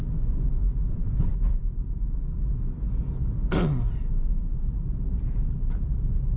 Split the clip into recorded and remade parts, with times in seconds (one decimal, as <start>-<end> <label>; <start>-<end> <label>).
0.0-1.3 recorded; 1.3-2.1 remade; 2.1-4.3 recorded; 4.3-6.4 remade